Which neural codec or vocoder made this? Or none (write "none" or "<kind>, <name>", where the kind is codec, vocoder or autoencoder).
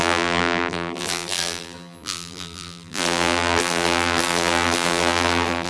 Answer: vocoder, BigVGAN v2